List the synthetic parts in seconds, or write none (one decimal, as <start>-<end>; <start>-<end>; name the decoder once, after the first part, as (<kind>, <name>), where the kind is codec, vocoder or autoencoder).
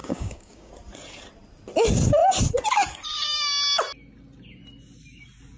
0.0-0.7 (codec, DAC)